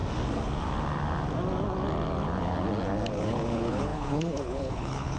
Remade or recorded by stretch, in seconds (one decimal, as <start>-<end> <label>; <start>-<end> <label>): 0.0-3.1 recorded; 3.1-5.2 remade